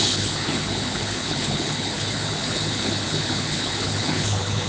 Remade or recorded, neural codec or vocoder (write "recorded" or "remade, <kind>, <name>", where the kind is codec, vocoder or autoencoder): remade, codec, HILCodec